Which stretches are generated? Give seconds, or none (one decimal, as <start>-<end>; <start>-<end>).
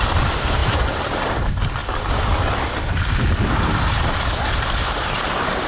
0.0-1.8; 5.2-5.7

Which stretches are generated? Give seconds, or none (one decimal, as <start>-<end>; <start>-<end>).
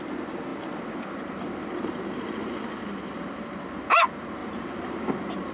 none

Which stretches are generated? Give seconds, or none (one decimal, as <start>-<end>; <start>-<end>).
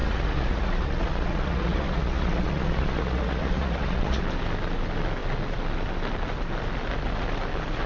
0.0-4.2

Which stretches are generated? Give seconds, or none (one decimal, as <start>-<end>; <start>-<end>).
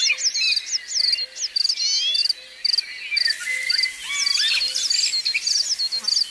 none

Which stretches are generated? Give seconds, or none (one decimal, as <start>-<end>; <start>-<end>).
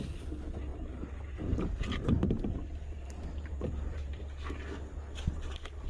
0.7-4.2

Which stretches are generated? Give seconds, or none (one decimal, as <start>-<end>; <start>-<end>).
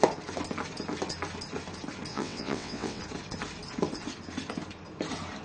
2.1-3.0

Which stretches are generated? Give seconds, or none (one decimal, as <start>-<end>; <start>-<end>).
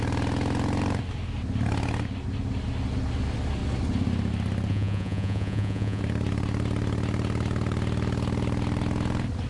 4.7-6.0